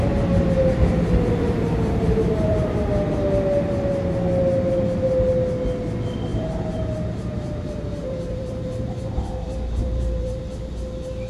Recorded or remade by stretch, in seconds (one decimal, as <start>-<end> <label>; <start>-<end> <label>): 0.0-1.4 recorded; 1.4-2.9 remade; 2.9-6.3 recorded; 6.3-10.4 remade; 10.4-11.3 recorded